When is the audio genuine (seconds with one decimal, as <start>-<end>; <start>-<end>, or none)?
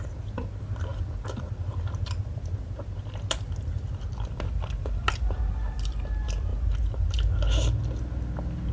0.0-8.7